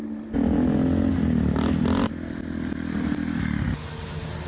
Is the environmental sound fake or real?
real